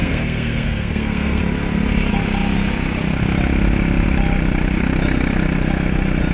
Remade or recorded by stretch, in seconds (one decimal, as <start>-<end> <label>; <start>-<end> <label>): 0.0-1.4 remade; 1.4-6.3 recorded